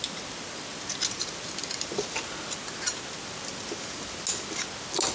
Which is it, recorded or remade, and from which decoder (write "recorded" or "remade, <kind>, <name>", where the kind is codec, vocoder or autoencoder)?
recorded